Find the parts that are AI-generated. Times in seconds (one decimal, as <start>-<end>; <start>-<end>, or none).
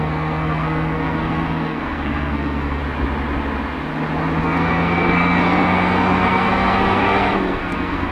0.0-2.8; 4.4-8.1